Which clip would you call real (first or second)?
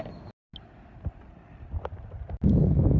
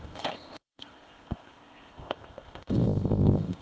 first